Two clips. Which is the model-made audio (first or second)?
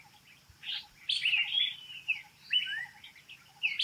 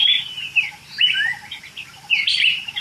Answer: second